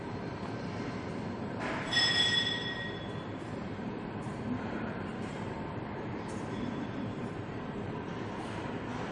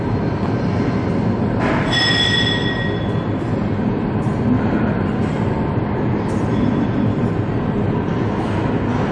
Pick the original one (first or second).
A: second